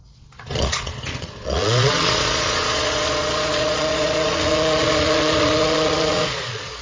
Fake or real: fake